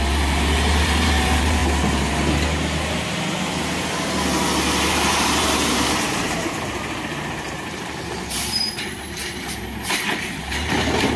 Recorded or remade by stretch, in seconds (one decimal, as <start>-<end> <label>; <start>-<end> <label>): 0.0-1.6 remade; 1.6-4.9 recorded; 4.9-11.2 remade